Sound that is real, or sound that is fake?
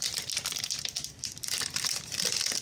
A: real